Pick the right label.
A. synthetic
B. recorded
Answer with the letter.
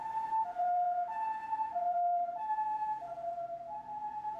B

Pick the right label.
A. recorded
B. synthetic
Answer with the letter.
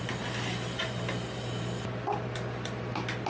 A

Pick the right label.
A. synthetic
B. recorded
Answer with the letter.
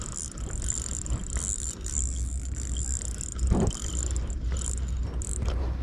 B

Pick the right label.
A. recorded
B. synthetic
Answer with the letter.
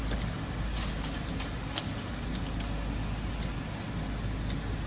A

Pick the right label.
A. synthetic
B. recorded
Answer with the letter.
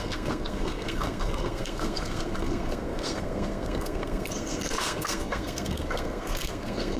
A